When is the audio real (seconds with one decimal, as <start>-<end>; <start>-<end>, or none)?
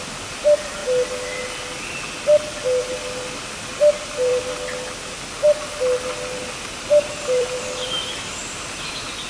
0.8-3.4; 4.3-6.6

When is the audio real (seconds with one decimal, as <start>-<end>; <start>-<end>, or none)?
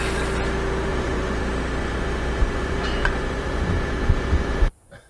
0.0-0.9; 1.4-1.8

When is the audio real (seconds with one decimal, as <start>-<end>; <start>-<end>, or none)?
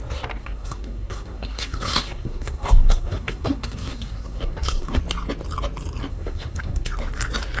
0.0-0.4; 5.0-6.1; 6.9-7.6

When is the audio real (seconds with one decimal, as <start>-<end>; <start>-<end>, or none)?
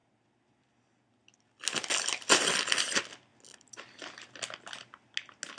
0.0-5.6